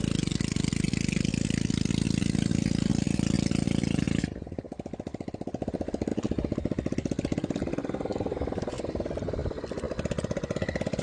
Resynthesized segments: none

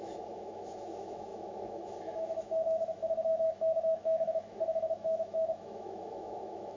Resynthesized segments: 0.0-6.8 (autoencoder, DAC-VAE)

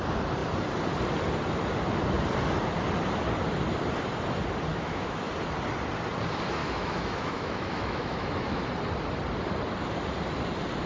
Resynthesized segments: 4.7-5.3 (autoencoder, DAC-VAE); 6.6-8.7